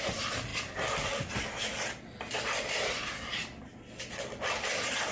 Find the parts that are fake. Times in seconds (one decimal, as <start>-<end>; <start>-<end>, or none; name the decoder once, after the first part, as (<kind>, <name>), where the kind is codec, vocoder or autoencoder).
none